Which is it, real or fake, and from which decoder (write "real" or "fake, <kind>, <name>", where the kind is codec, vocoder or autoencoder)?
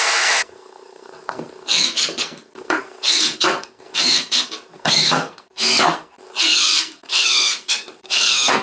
fake, codec, SNAC